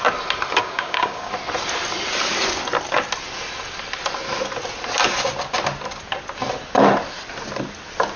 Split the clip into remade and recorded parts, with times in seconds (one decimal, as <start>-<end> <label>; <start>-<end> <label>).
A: 0.0-0.6 recorded; 0.6-1.3 remade; 1.3-8.2 recorded